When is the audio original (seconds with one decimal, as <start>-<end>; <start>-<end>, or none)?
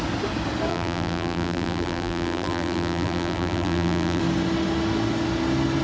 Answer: 0.0-0.7; 4.2-5.8